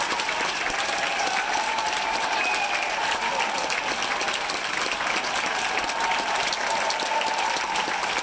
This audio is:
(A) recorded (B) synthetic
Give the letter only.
A